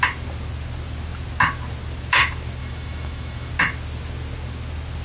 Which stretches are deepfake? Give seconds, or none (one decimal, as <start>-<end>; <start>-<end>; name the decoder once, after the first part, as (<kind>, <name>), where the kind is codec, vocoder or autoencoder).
2.6-3.5 (autoencoder, DAC-VAE)